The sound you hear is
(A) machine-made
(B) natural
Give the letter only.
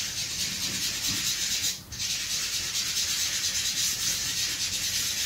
B